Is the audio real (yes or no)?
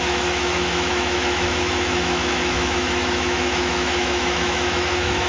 no